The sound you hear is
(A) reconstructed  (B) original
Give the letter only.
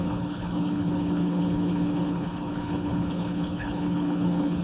A